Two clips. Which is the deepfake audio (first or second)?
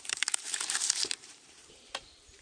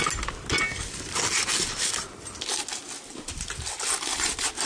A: first